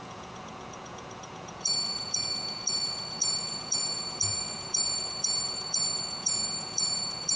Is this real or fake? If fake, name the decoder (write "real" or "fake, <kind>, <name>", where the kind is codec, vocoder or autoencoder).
fake, vocoder, Vocos